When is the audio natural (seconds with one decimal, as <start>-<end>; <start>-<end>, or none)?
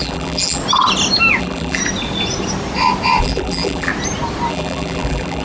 0.6-1.4; 1.8-3.2; 3.9-4.5